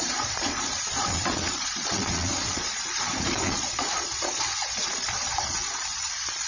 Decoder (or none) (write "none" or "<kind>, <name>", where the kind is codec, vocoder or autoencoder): vocoder, Vocos